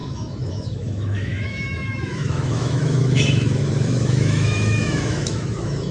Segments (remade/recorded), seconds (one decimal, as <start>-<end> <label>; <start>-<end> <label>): 0.0-5.9 remade